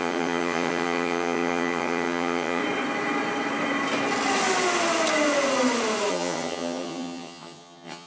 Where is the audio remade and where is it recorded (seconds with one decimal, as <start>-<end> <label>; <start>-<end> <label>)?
0.0-2.6 remade; 2.6-6.1 recorded; 6.1-8.1 remade